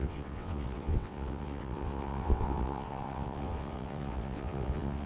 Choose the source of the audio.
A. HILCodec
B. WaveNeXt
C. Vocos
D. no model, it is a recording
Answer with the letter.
B